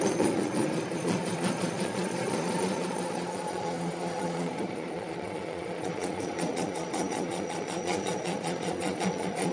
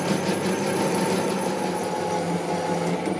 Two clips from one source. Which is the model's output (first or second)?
first